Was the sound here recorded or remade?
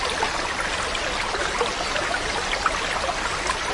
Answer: recorded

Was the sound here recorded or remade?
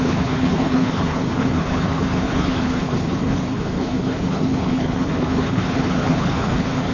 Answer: remade